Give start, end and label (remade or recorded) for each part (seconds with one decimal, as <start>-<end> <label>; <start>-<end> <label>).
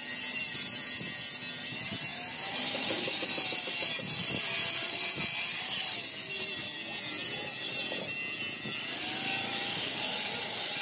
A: 0.0-10.8 recorded